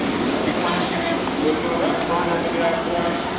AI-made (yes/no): no